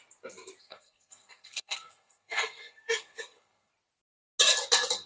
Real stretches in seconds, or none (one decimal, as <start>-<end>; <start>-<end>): 0.0-0.6; 3.7-5.1